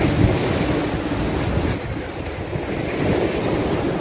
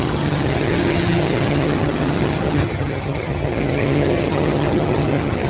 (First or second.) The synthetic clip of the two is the second